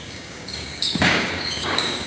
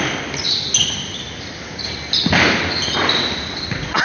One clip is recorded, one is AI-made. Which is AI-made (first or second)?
first